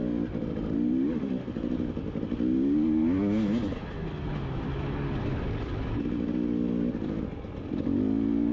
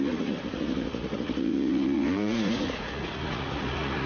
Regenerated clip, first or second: second